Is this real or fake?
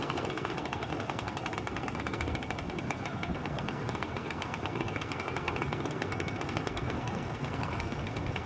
fake